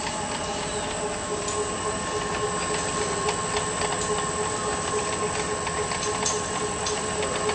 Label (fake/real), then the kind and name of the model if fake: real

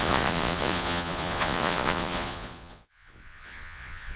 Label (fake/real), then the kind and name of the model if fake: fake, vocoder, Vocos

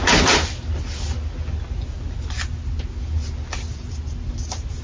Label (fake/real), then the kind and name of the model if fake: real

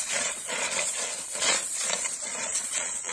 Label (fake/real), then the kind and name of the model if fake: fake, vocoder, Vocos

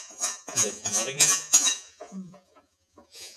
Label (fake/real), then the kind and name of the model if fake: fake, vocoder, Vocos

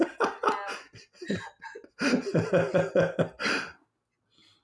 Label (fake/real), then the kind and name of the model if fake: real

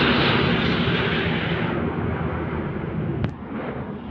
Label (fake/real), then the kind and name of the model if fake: real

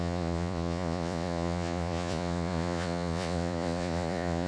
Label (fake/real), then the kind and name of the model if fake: fake, vocoder, Vocos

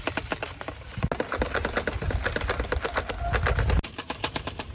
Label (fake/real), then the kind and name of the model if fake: real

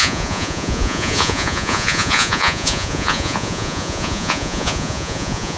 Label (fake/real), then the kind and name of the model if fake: fake, vocoder, Vocos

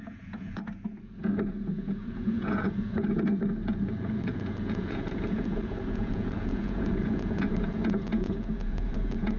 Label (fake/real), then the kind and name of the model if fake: fake, vocoder, Vocos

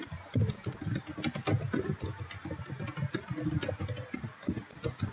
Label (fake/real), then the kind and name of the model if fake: real